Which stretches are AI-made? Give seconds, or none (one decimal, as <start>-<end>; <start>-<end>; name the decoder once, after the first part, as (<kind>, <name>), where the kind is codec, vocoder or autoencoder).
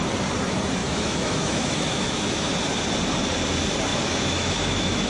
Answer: 0.8-2.5 (autoencoder, DAC-VAE); 3.9-5.1